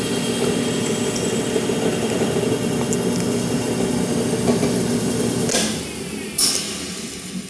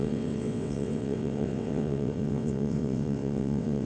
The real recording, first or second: first